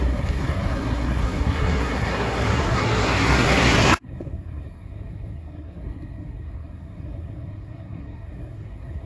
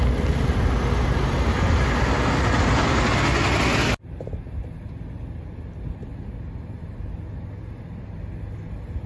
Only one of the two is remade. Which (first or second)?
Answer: first